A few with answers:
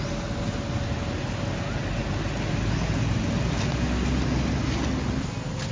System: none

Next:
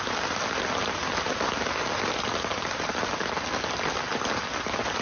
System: none